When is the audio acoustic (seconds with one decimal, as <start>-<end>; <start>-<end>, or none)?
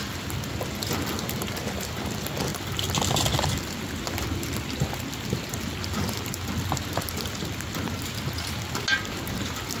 0.0-9.8